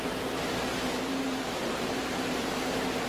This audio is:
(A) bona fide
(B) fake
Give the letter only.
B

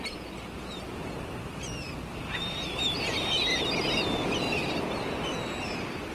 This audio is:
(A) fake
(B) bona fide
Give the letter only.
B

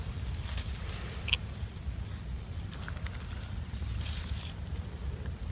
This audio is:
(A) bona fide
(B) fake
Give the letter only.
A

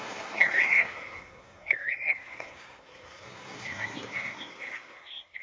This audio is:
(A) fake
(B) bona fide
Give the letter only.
A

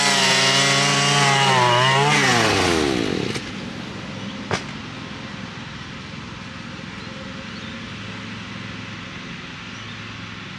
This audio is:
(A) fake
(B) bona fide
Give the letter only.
B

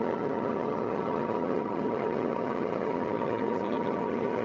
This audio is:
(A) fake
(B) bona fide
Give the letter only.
A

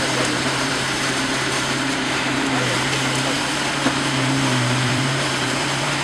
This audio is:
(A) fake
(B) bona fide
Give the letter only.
A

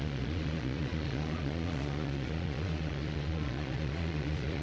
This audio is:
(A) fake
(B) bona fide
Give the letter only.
A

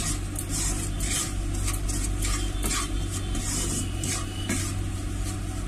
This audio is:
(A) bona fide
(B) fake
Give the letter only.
A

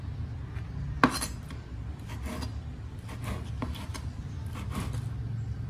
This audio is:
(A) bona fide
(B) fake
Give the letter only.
A